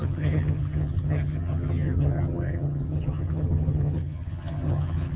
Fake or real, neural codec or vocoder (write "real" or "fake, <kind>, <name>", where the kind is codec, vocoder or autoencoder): fake, vocoder, HiFi-GAN